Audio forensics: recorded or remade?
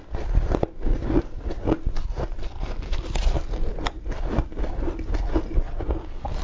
recorded